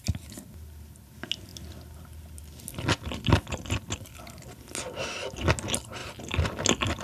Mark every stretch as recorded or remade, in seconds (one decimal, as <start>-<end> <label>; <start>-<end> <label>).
0.0-7.0 recorded